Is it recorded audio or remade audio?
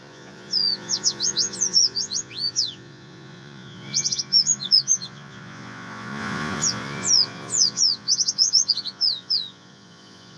remade